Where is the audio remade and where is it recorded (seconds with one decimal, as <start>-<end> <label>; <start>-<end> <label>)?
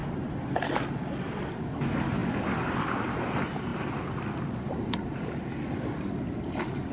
0.0-6.9 recorded